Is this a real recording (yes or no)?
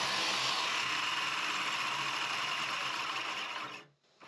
yes